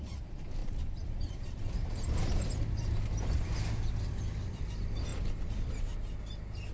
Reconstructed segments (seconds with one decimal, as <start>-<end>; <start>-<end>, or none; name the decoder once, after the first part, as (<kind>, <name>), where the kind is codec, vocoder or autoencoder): 0.0-5.1 (vocoder, BigVGAN v2); 6.2-6.7